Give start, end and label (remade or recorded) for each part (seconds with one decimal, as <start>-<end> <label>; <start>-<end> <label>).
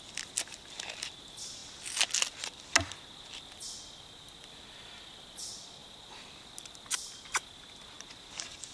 0.0-8.7 recorded